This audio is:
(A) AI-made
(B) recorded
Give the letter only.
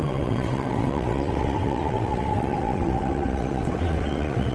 A